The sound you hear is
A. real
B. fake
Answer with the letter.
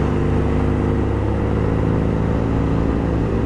A